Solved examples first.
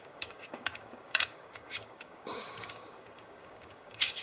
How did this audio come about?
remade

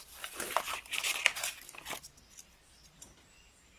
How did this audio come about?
recorded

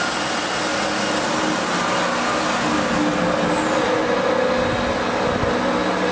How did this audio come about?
recorded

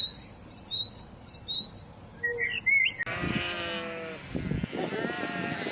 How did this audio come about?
recorded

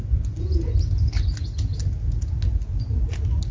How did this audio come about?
recorded